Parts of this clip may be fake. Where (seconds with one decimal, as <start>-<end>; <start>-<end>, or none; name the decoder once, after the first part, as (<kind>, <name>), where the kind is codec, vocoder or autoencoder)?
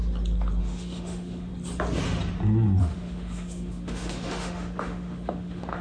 0.6-1.5 (autoencoder, DAC-VAE); 2.8-5.8